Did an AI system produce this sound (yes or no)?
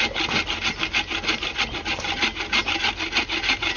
no